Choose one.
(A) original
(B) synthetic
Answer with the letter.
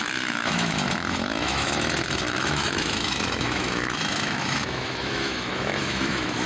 B